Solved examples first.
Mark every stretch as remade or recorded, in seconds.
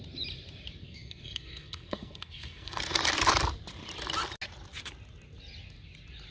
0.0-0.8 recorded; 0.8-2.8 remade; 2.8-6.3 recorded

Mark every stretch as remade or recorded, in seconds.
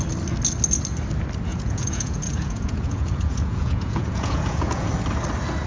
0.0-1.5 recorded; 1.5-4.9 remade; 4.9-5.7 recorded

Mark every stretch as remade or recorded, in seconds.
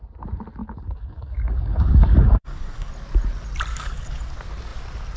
0.0-0.6 recorded; 0.6-2.9 remade; 2.9-3.7 recorded; 3.7-4.2 remade; 4.2-5.2 recorded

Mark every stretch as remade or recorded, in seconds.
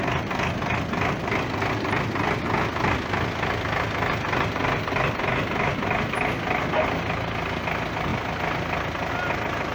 0.0-8.1 recorded; 8.1-9.1 remade; 9.1-9.7 recorded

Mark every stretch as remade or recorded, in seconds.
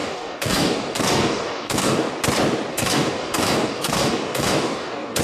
0.0-2.1 remade; 2.1-2.7 recorded; 2.7-5.2 remade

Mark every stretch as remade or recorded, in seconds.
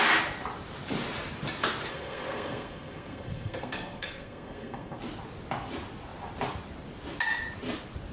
0.0-1.9 recorded; 1.9-5.0 remade; 5.0-8.1 recorded